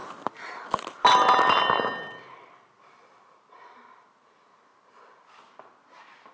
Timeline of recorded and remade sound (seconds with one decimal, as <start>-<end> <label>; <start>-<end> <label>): 0.0-6.3 recorded